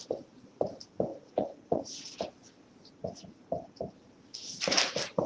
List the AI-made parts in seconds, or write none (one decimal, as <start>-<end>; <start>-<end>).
1.1-2.1; 2.8-3.5